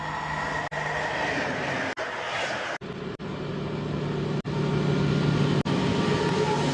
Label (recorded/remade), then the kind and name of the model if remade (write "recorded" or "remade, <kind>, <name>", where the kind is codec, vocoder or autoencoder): recorded